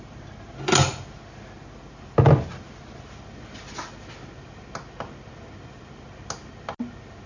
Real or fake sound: real